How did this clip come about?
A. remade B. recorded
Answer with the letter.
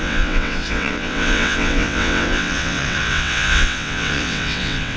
A